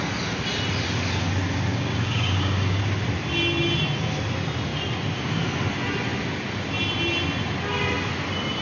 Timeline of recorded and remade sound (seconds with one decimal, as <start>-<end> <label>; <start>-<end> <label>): 0.0-1.7 recorded; 1.7-2.8 remade; 2.8-8.6 recorded

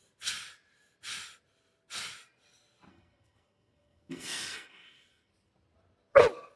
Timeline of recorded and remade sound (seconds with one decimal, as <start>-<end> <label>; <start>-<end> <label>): 0.0-2.9 recorded; 2.9-5.3 remade; 5.3-6.6 recorded

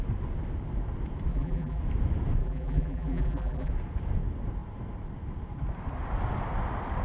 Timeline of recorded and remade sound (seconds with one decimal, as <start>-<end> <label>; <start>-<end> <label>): 0.0-1.3 recorded; 1.3-1.8 remade; 1.8-2.4 recorded; 2.4-3.7 remade; 3.7-7.0 recorded

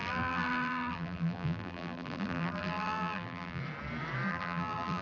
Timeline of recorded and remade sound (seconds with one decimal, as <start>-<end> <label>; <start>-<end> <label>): 0.0-3.6 remade; 3.6-4.3 recorded; 4.3-5.0 remade